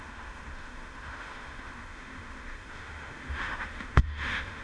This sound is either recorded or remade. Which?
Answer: remade